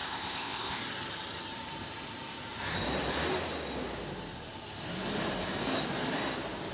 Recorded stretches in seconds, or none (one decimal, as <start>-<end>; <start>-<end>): 0.8-6.7